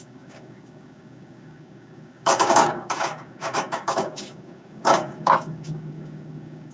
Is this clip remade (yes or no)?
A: yes